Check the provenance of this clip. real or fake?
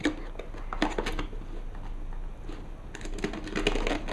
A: real